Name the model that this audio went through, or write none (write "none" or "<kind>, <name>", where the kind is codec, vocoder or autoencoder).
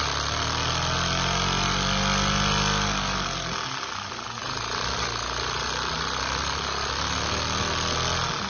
none